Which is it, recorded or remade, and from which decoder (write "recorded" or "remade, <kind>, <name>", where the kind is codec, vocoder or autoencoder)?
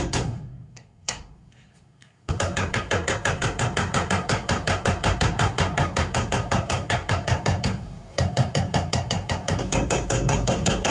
remade, codec, SNAC